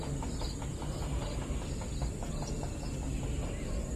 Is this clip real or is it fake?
real